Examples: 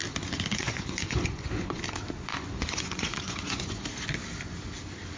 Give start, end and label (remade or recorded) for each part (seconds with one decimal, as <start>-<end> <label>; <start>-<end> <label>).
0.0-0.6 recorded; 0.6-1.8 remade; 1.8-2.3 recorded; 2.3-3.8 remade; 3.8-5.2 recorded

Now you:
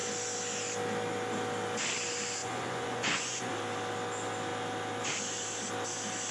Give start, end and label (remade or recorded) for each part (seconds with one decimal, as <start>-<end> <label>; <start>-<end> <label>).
0.0-2.4 recorded; 2.4-3.5 remade; 3.5-6.3 recorded

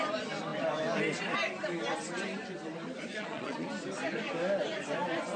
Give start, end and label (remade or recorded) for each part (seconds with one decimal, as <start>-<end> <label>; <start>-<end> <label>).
0.0-3.1 recorded; 3.1-3.7 remade; 3.7-5.4 recorded

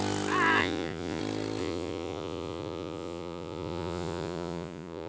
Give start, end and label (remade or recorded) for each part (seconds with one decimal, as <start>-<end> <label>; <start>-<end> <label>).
0.0-0.6 recorded; 0.6-1.2 remade; 1.2-1.6 recorded; 1.6-5.1 remade

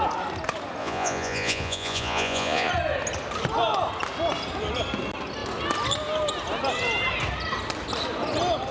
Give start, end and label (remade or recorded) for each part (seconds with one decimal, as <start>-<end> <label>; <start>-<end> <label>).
0.0-0.8 recorded; 0.8-2.7 remade; 2.7-8.7 recorded

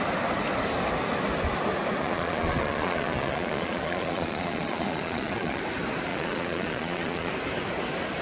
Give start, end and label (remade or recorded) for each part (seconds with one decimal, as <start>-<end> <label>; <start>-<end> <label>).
0.0-2.0 recorded; 2.0-5.6 remade; 5.6-6.1 recorded; 6.1-7.3 remade; 7.3-8.2 recorded

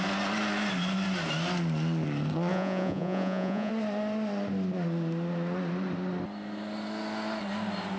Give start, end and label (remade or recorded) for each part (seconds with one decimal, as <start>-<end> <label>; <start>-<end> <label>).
0.0-2.5 recorded; 2.5-3.7 remade; 3.7-8.0 recorded